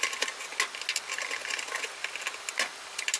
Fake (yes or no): no